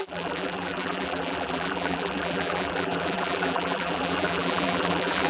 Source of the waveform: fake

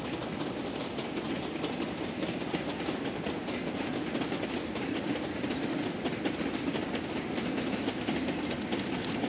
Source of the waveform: real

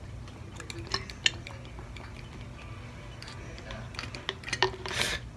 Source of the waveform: real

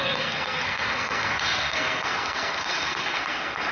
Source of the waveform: fake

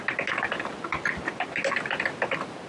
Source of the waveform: real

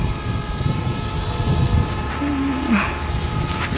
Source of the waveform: real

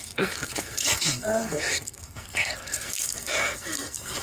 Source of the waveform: fake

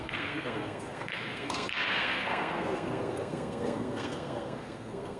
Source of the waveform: fake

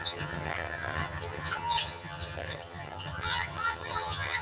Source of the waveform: fake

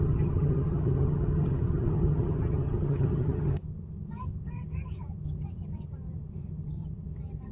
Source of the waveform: fake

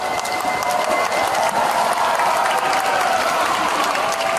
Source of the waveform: real